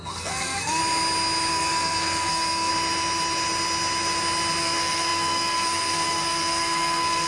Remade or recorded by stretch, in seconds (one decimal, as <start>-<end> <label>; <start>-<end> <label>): 0.0-0.8 remade; 0.8-1.5 recorded; 1.5-2.7 remade; 2.7-4.6 recorded; 4.6-7.3 remade